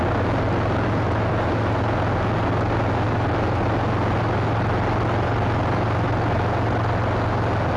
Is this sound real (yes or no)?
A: yes